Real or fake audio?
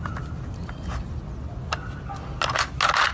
real